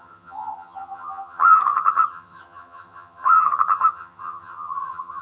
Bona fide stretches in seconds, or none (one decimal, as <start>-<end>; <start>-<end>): none

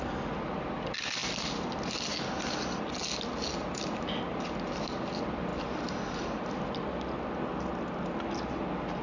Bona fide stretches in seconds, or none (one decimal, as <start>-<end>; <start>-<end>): 0.0-9.0

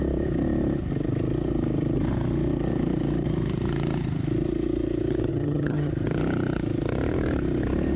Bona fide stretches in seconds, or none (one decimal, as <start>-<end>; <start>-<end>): 0.0-5.3; 5.9-8.0